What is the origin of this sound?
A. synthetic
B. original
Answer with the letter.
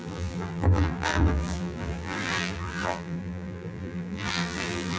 A